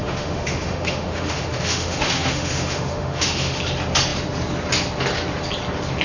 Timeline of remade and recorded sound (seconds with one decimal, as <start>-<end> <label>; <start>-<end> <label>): 0.0-3.6 remade; 3.6-6.0 recorded